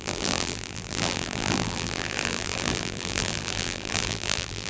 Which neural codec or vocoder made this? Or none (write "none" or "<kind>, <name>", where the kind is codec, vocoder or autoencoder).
vocoder, BigVGAN v2